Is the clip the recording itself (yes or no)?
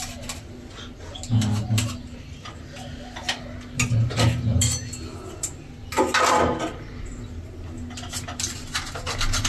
yes